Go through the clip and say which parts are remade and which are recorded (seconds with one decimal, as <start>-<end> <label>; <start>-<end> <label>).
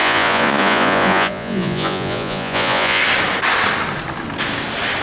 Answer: 0.0-3.0 remade; 3.0-5.0 recorded